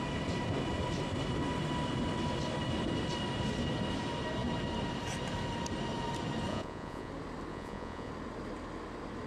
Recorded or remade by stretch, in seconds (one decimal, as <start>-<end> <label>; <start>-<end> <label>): 0.0-6.5 recorded; 6.5-7.1 remade; 7.1-7.5 recorded; 7.5-8.1 remade; 8.1-9.3 recorded